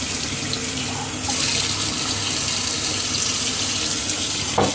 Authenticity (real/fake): real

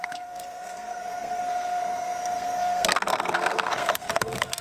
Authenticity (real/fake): fake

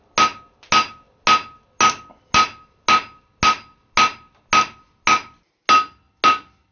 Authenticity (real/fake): real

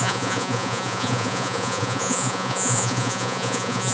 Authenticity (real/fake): fake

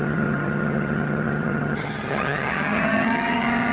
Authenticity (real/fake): fake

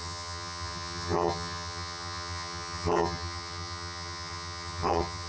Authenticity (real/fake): fake